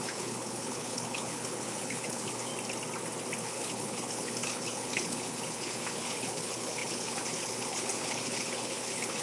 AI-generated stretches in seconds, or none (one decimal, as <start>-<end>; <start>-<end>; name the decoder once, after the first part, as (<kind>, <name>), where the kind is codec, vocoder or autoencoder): 0.0-2.5 (codec, HILCodec); 3.4-9.2